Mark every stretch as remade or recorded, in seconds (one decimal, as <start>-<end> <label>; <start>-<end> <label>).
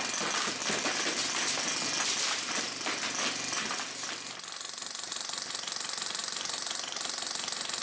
0.0-7.8 recorded